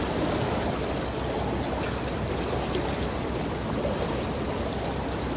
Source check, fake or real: real